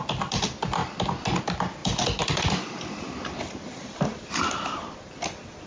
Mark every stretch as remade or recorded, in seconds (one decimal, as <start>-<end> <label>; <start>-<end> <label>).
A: 0.0-1.8 recorded; 1.8-5.2 remade; 5.2-5.7 recorded